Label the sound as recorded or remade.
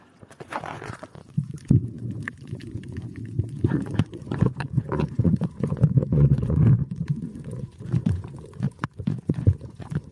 remade